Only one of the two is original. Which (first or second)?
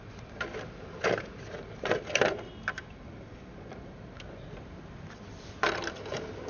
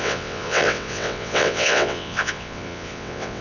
first